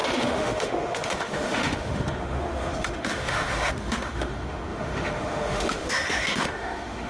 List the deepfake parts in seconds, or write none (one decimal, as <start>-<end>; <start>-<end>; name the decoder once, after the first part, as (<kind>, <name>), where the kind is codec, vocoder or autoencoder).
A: 0.0-7.1 (autoencoder, DAC-VAE)